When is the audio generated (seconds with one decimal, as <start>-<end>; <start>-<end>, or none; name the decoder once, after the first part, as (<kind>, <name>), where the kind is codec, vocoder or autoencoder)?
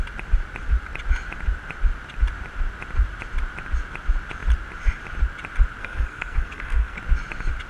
5.8-7.0 (codec, SNAC)